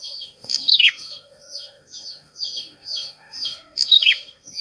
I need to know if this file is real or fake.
fake